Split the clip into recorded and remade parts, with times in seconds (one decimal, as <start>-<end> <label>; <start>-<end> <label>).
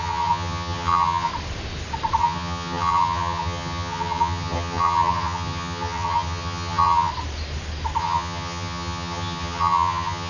0.0-1.3 remade; 1.3-2.2 recorded; 2.2-7.1 remade; 7.1-8.0 recorded; 8.0-10.3 remade